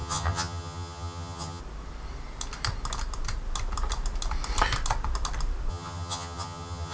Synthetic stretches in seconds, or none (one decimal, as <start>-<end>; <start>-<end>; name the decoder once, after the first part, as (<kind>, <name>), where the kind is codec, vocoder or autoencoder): 0.0-1.6 (vocoder, HiFi-GAN); 5.7-6.9